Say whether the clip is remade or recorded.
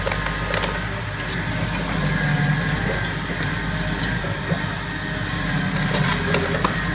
recorded